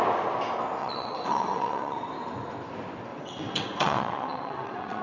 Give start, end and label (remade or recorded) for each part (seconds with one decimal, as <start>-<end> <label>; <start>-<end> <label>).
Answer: 0.0-0.8 recorded; 0.8-2.1 remade; 2.1-3.1 recorded; 3.1-5.0 remade